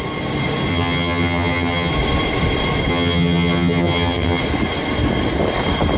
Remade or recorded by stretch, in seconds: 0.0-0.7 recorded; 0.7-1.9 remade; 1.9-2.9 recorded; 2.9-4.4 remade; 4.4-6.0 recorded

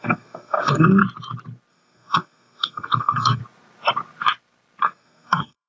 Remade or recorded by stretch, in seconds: 0.0-1.0 remade; 1.0-1.7 recorded; 1.7-3.4 remade; 3.4-4.8 recorded; 4.8-5.7 remade

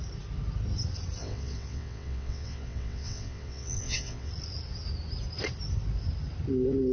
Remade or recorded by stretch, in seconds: 0.0-1.2 recorded; 1.2-4.3 remade; 4.3-6.9 recorded